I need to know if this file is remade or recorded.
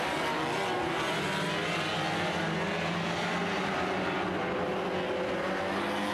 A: recorded